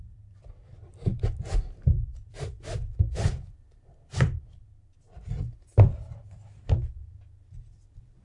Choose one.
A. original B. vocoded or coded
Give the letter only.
B